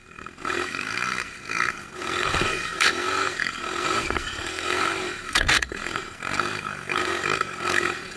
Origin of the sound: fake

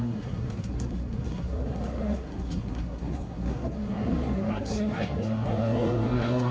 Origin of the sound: fake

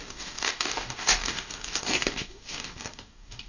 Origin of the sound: fake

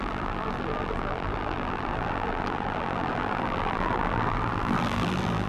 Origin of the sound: fake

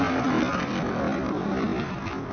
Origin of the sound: real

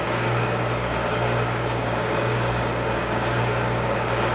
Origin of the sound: fake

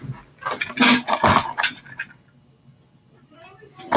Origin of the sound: real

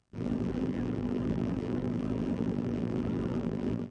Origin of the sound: fake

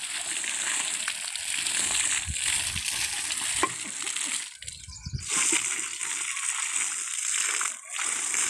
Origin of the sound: real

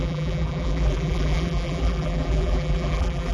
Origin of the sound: fake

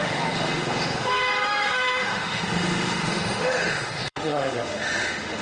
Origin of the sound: fake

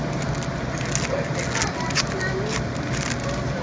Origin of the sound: real